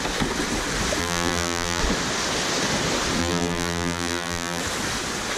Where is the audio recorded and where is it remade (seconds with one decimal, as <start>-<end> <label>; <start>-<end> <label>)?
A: 0.0-1.0 recorded; 1.0-1.8 remade; 1.8-3.2 recorded; 3.2-4.6 remade; 4.6-5.4 recorded